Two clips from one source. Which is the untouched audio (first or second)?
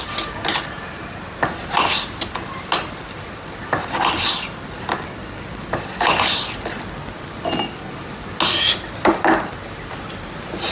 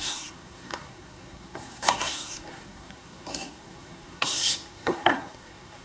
first